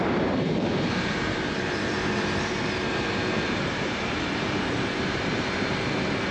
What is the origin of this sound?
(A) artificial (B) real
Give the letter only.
A